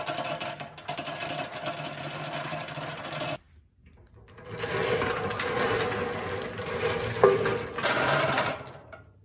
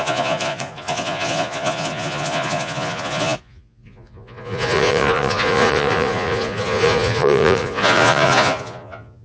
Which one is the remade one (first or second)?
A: second